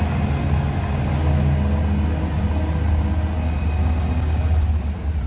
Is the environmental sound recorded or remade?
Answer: recorded